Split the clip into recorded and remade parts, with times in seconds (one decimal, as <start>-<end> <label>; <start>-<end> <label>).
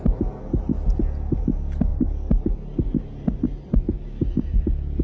0.0-5.0 recorded